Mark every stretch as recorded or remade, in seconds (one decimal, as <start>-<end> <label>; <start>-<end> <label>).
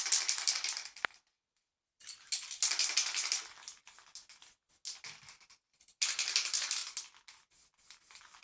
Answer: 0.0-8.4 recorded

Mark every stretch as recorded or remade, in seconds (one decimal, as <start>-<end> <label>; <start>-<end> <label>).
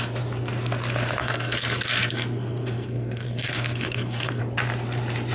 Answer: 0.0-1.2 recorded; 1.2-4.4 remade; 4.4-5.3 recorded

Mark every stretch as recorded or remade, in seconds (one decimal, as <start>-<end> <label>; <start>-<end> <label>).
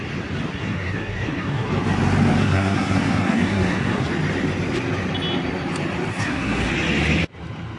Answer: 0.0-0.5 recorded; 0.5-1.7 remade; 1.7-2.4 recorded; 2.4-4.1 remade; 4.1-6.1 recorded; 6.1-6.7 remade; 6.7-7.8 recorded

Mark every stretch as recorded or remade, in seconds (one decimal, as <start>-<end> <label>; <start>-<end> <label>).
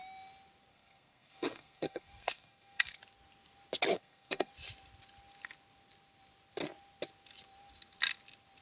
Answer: 0.0-0.7 recorded; 0.7-3.0 remade; 3.0-3.9 recorded; 3.9-4.5 remade; 4.5-8.6 recorded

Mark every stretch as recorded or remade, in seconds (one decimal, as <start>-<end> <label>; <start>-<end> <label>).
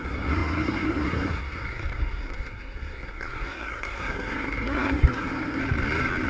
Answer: 0.0-5.6 remade; 5.6-6.3 recorded